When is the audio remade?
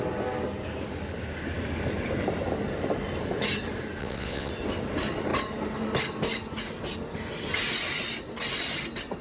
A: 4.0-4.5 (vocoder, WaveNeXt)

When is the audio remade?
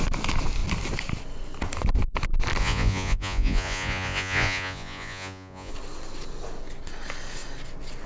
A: 2.6-5.7 (vocoder, Vocos)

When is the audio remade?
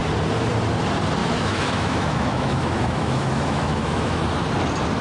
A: 1.2-4.2 (autoencoder, DAC-VAE)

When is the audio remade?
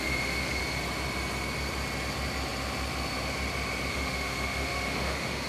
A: 0.0-0.6 (autoencoder, DAC-VAE); 3.9-5.5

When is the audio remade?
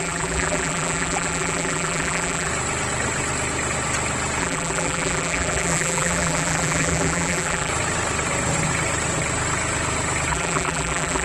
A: 0.0-2.5 (vocoder, BigVGAN v2); 4.4-7.7; 10.3-11.2